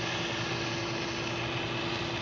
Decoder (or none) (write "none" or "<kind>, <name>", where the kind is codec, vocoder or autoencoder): none